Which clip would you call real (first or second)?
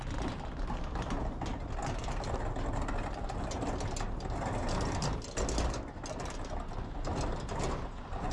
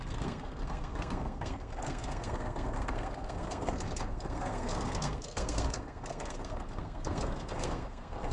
first